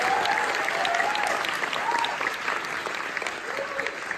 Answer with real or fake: real